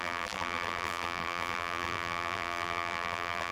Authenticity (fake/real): fake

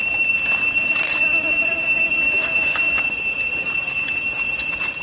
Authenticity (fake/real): real